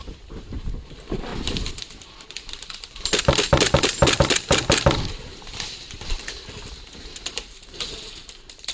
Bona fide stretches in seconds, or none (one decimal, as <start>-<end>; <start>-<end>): 1.3-2.7